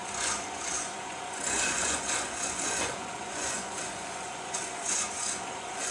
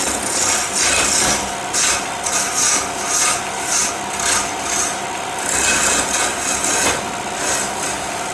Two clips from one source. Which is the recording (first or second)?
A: second